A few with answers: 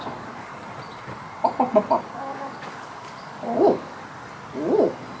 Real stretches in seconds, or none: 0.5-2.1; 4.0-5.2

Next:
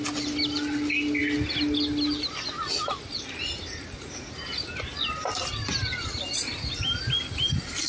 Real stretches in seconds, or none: 0.0-7.9

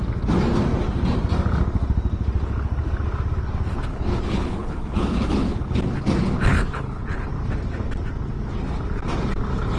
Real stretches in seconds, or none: 0.0-3.9; 5.8-6.5; 7.3-9.8

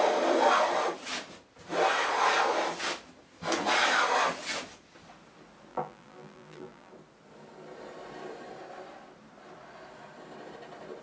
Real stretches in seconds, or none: 0.0-5.7; 6.9-11.0

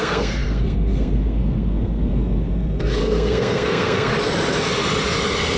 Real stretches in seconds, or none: 4.1-5.6

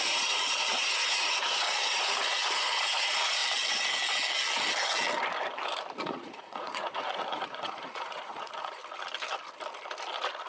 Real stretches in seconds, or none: 3.4-6.0; 8.8-10.5

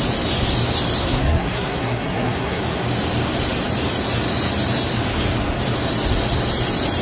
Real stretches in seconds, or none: 0.0-1.0; 2.6-7.0